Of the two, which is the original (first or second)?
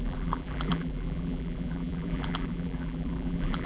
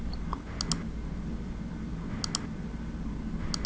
second